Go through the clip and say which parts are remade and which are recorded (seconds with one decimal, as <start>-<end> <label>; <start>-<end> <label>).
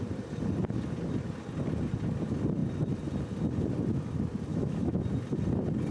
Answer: 0.0-4.5 recorded; 4.5-5.0 remade; 5.0-5.9 recorded